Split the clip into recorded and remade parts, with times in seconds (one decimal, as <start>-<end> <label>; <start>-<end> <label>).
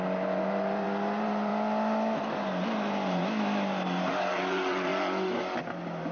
0.0-1.5 remade; 1.5-4.1 recorded; 4.1-4.9 remade; 4.9-6.1 recorded